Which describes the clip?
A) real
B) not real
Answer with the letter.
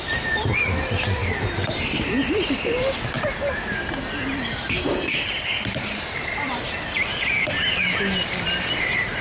B